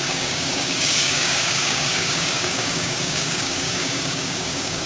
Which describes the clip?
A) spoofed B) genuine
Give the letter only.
A